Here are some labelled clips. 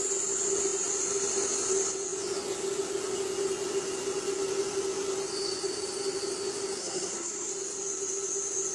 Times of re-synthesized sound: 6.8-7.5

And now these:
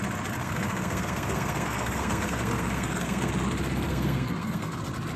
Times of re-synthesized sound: 0.4-3.3; 3.9-4.8

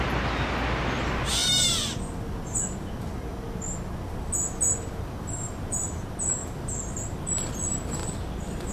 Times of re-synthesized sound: none

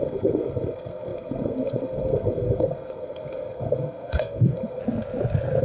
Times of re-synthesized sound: 0.0-4.8